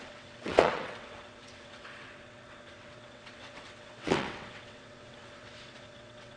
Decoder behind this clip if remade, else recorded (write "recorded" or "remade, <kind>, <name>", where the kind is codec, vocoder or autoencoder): remade, vocoder, WaveNeXt